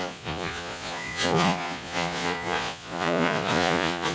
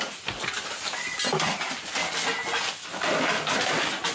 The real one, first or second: second